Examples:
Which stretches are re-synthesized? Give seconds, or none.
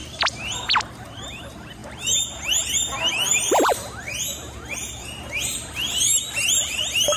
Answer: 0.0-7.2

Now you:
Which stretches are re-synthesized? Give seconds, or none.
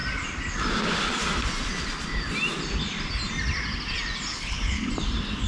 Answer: 4.3-4.9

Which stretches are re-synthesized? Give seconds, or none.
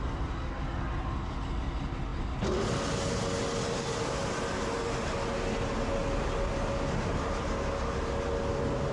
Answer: none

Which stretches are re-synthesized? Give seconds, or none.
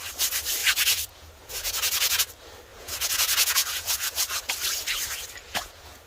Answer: 0.6-2.2; 2.7-4.5; 5.4-6.1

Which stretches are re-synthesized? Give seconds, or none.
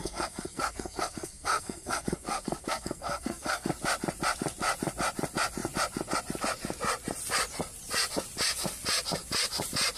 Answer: 0.0-3.7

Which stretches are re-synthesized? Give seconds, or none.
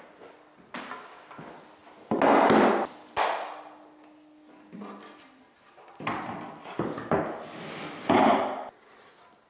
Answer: none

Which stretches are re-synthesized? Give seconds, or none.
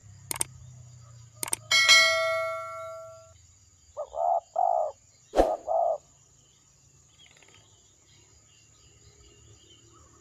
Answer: 5.3-7.3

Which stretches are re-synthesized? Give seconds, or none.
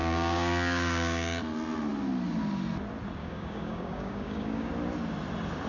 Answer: 0.0-1.4; 3.2-4.7